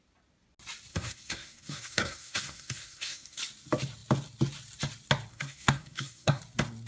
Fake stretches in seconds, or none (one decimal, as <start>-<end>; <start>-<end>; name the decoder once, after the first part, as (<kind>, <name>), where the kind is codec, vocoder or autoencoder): 0.9-3.4 (codec, SNAC); 5.3-6.4